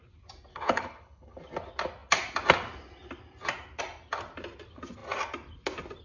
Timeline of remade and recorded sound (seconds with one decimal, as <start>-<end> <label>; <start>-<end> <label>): 0.0-0.5 recorded; 0.5-1.4 remade; 1.4-6.0 recorded